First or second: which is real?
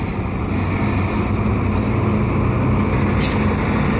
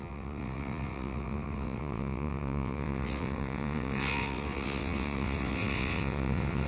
first